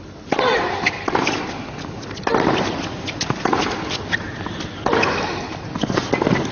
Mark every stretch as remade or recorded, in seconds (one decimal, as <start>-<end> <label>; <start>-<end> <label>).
0.0-6.5 recorded